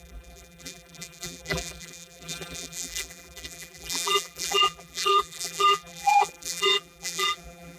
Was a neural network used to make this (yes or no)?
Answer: yes